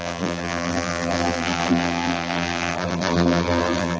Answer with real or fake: fake